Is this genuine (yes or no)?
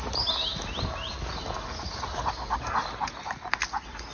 yes